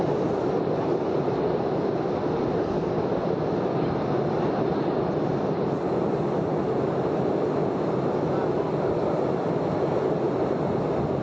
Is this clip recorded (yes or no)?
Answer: yes